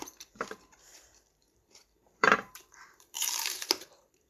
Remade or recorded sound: remade